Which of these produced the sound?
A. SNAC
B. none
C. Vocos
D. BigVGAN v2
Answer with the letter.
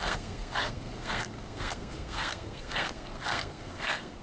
A